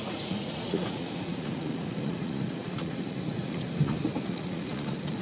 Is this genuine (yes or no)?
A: no